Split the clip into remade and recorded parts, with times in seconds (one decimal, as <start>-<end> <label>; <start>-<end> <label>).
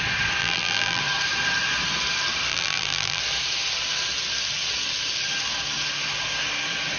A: 0.0-0.4 recorded; 0.4-1.0 remade; 1.0-2.5 recorded; 2.5-3.2 remade; 3.2-7.0 recorded